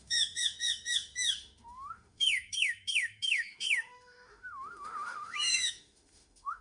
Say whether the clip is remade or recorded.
remade